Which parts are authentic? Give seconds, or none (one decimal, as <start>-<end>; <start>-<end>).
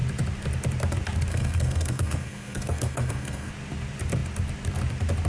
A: 0.0-1.3; 3.5-5.3